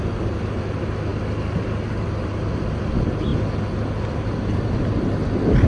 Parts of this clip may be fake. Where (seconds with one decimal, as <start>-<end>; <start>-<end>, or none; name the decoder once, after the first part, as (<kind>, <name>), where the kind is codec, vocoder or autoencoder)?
none